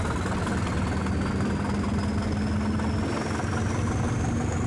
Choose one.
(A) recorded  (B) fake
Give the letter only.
A